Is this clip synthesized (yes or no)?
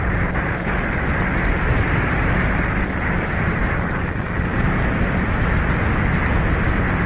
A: no